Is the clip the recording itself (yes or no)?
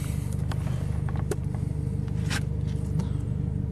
yes